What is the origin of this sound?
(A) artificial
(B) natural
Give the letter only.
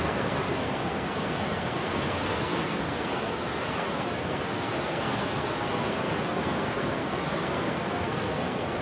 A